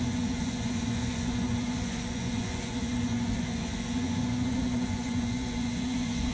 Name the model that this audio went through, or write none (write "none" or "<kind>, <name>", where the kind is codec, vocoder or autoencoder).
vocoder, Vocos